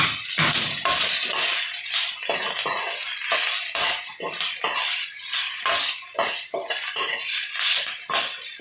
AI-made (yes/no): no